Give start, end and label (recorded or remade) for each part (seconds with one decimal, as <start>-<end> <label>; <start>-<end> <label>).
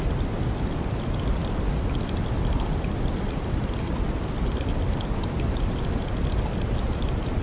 0.0-7.4 recorded